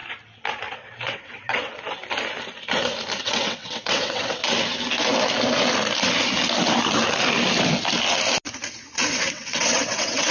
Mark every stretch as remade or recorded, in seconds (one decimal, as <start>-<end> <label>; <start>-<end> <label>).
0.0-0.7 recorded; 0.7-1.7 remade; 1.7-3.2 recorded; 3.2-4.4 remade; 4.4-9.3 recorded; 9.3-10.3 remade